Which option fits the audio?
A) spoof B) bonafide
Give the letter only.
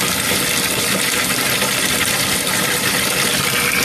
B